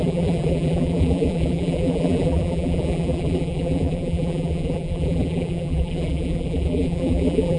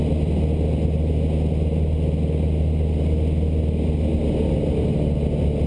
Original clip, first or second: second